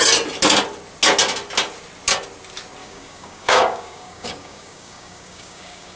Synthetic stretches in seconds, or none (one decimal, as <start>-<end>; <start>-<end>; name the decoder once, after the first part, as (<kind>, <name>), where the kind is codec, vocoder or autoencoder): 2.8-6.0 (codec, DAC)